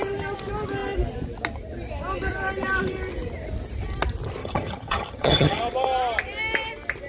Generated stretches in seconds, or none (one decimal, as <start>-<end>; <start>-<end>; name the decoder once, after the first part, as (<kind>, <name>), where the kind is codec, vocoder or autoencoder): 4.4-5.6 (vocoder, HiFi-GAN)